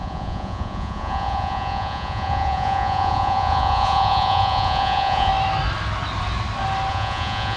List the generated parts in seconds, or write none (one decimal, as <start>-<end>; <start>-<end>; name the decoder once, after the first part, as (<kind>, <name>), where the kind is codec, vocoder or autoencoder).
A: 0.0-5.3 (vocoder, Vocos); 6.9-7.6